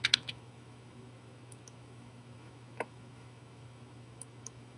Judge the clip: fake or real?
fake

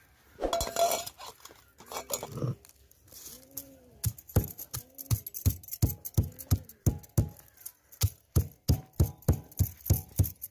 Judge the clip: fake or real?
real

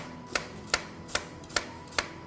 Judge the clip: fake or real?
real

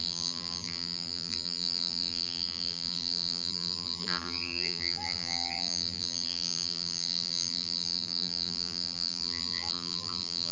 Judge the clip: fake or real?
fake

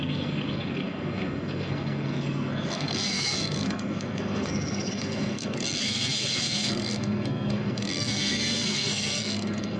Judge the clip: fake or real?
fake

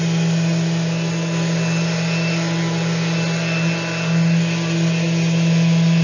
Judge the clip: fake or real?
real